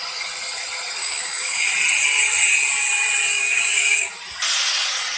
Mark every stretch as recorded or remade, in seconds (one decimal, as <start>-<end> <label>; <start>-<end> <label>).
0.0-1.0 recorded; 1.0-1.7 remade; 1.7-3.3 recorded; 3.3-4.1 remade; 4.1-5.2 recorded